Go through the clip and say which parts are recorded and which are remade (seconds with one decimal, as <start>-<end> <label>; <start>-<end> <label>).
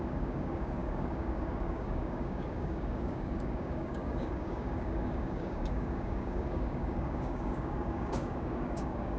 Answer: 0.0-9.2 remade